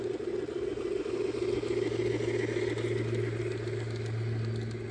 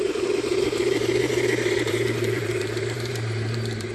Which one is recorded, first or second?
first